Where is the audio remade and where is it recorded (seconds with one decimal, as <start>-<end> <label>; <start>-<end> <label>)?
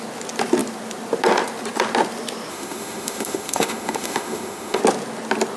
0.0-2.5 recorded; 2.5-4.8 remade; 4.8-5.6 recorded